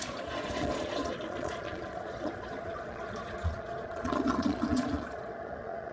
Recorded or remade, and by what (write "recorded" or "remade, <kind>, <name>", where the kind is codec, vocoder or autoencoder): remade, vocoder, Vocos